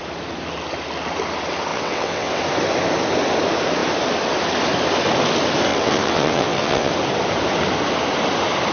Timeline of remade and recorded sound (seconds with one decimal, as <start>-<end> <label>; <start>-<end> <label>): 0.0-1.7 recorded; 1.7-2.4 remade; 2.4-5.7 recorded; 5.7-6.9 remade; 6.9-8.7 recorded